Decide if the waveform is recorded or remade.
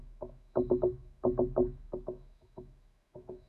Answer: remade